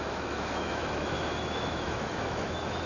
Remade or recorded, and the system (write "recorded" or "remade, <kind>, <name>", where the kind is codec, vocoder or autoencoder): remade, autoencoder, DAC-VAE